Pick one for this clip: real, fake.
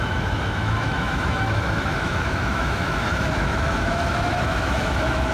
fake